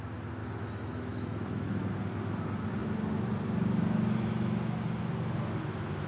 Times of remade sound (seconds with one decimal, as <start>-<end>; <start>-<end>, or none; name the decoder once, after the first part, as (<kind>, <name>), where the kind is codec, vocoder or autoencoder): 0.4-1.9 (autoencoder, DAC-VAE)

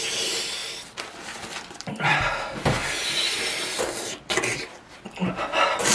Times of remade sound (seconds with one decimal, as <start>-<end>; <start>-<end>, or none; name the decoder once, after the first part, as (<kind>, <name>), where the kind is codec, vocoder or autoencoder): 0.6-2.2 (vocoder, BigVGAN v2); 2.8-5.1

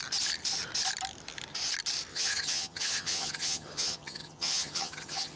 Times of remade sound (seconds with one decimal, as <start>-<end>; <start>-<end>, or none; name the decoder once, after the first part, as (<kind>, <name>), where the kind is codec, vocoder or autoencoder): 2.1-5.4 (vocoder, HiFi-GAN)